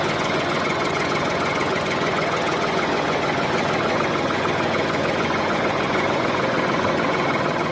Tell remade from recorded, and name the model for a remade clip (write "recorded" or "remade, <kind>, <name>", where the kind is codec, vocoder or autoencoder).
remade, vocoder, Vocos